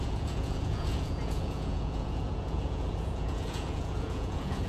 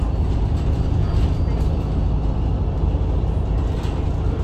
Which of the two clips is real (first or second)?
second